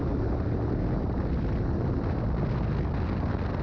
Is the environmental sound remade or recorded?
recorded